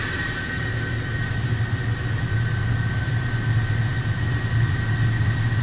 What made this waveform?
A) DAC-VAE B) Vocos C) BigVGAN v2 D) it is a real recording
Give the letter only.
D